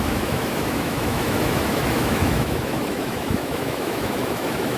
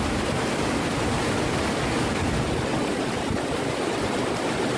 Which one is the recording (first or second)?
second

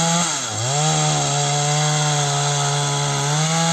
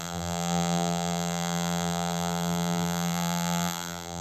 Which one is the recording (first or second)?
first